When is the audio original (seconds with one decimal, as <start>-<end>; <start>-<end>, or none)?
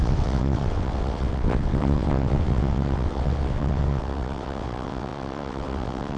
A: none